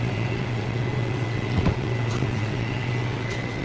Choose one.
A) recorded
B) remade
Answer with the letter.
B